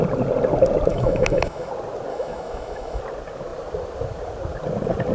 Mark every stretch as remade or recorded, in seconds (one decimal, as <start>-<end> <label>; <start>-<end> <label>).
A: 0.0-0.9 recorded; 0.9-1.7 remade; 1.7-2.1 recorded; 2.1-3.0 remade; 3.0-5.1 recorded